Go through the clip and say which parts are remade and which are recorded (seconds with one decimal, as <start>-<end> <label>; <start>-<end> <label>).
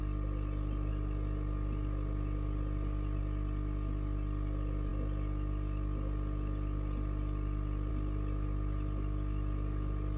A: 0.0-10.2 recorded